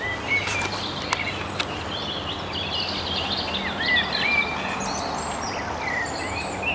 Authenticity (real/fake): real